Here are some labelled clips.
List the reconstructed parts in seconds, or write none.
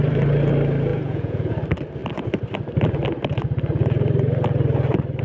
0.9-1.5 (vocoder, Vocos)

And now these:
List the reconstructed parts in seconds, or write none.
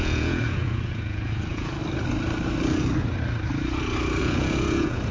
0.0-1.8 (vocoder, Vocos); 4.2-5.1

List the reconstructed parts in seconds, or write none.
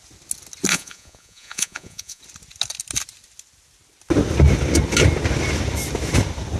0.7-2.2 (vocoder, Vocos)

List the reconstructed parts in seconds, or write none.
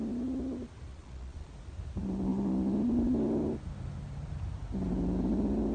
0.9-1.5 (vocoder, Vocos)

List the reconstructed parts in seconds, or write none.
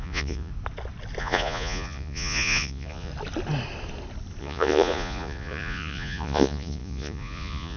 0.0-0.5 (vocoder, Vocos); 1.2-3.1; 4.4-7.8